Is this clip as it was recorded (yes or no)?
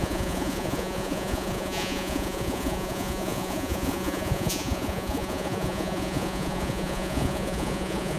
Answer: no